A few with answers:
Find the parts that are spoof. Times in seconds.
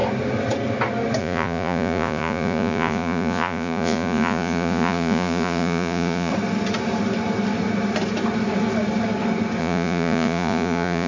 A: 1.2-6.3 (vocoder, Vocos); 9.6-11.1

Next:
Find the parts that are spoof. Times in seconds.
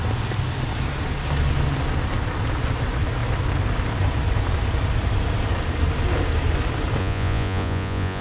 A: 7.0-8.2 (vocoder, Vocos)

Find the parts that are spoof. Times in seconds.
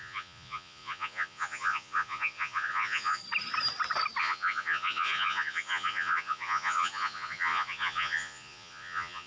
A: 0.0-3.2 (vocoder, Vocos); 4.2-9.3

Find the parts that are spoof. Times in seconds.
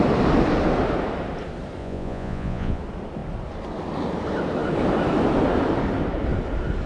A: 1.8-2.8 (vocoder, Vocos)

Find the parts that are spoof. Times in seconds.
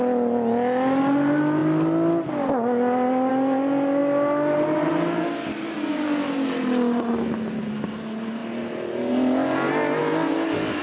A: none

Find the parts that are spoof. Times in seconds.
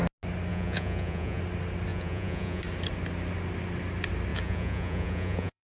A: 0.5-1.4 (vocoder, Vocos); 1.9-2.6; 4.3-5.7